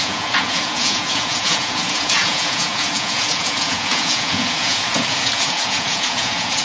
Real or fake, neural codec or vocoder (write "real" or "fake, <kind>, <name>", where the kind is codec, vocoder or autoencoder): fake, vocoder, Vocos